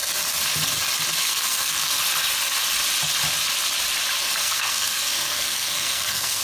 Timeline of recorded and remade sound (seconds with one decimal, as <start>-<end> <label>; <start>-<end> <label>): 0.0-1.2 recorded; 1.2-2.0 remade; 2.0-4.2 recorded; 4.2-6.4 remade